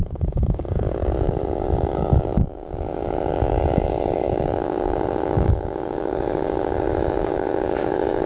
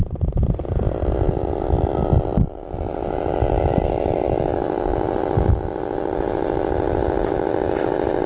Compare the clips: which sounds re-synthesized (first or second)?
first